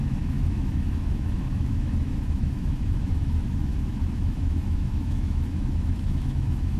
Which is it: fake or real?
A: fake